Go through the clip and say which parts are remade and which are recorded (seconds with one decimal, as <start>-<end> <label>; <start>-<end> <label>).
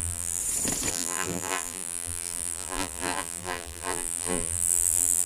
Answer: 0.0-0.4 remade; 0.4-0.9 recorded; 0.9-5.3 remade